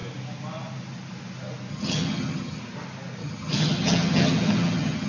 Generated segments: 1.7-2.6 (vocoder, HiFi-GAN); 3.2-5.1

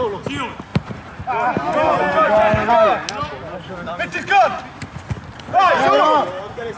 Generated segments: none